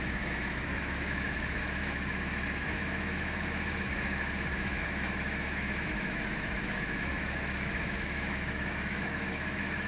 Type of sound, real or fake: fake